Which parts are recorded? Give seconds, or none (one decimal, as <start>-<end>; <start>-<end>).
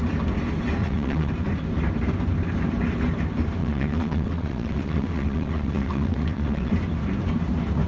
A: 0.0-0.8; 1.3-3.6; 6.7-7.9